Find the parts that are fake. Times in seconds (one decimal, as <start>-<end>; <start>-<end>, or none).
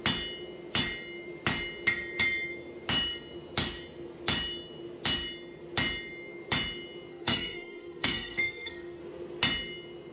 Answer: 7.1-9.0